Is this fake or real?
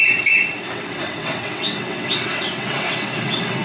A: fake